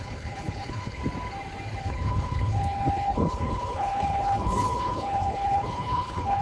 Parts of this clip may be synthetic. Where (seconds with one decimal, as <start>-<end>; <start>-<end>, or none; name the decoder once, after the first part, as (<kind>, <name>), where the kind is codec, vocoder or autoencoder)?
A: 0.0-1.0 (codec, HILCodec); 1.8-6.4